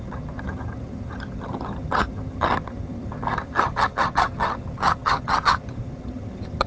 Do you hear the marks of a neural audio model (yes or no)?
yes